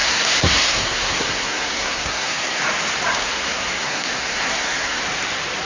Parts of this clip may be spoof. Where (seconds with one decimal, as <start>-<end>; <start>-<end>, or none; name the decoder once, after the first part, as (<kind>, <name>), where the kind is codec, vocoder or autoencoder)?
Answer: 0.0-2.6 (codec, SNAC); 3.2-5.0